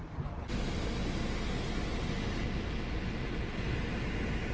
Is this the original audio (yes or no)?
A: yes